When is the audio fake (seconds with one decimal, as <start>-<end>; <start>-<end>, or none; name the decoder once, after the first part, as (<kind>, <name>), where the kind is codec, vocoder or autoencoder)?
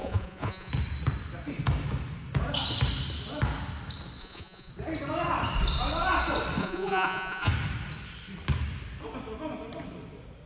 0.0-0.7 (vocoder, Vocos); 4.2-4.7; 6.6-7.5